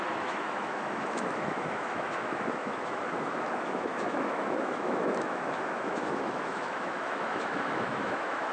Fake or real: fake